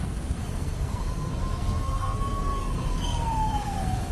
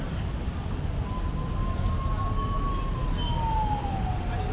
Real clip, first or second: second